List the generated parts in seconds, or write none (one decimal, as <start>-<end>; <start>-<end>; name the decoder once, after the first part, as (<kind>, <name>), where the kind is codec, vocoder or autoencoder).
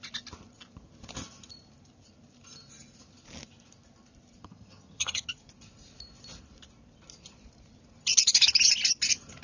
4.4-5.2 (vocoder, HiFi-GAN)